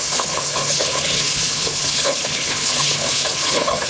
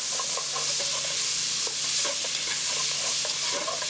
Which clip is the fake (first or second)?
first